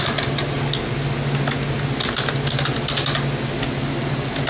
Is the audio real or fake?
real